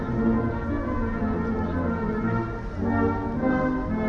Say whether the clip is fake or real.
real